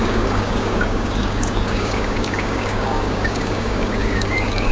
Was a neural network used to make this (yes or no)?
yes